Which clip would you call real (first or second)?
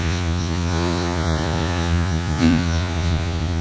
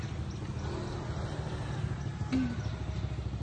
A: second